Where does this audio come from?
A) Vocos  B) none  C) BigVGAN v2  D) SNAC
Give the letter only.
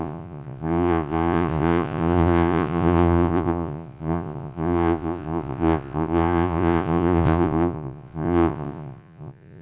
A